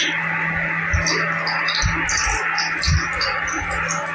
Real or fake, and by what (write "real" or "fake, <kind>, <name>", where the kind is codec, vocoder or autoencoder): real